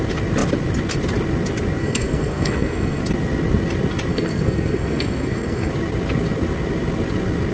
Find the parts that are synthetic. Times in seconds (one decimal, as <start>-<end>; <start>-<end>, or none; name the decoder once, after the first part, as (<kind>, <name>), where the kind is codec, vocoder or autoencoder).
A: 1.8-3.0 (codec, SNAC); 4.1-5.7